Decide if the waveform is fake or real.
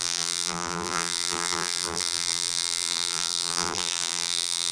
fake